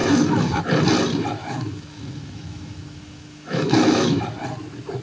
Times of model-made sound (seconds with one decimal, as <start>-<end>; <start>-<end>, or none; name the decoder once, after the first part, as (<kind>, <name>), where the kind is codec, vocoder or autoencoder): 0.0-0.6 (autoencoder, DAC-VAE); 1.4-4.2